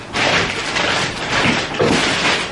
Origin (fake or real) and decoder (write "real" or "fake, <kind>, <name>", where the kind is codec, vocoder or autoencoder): real